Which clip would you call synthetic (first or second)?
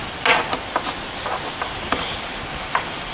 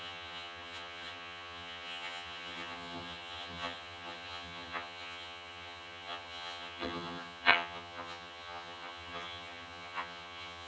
second